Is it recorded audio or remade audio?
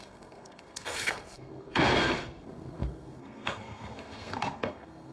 remade